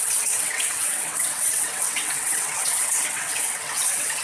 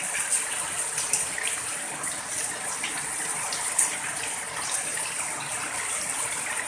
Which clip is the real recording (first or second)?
second